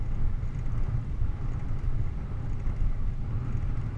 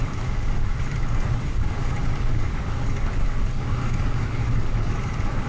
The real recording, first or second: first